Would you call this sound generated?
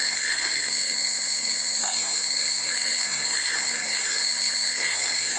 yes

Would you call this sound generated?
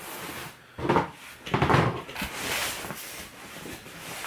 no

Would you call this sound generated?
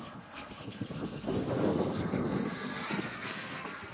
yes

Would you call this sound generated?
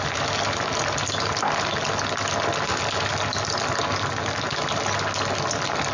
no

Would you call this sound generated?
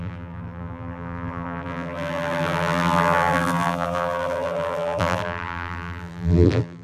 yes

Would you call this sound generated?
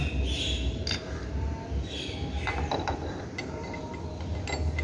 no